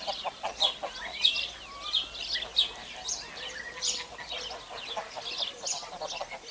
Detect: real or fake real